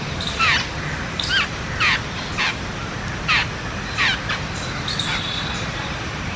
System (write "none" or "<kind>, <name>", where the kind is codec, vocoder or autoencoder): none